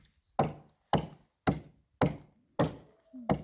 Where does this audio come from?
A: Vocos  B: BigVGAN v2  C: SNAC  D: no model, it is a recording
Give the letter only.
D